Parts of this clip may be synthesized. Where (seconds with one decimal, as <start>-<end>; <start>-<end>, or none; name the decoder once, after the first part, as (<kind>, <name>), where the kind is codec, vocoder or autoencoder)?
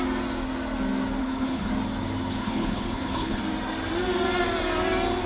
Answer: 1.2-1.7 (codec, HILCodec); 2.4-3.4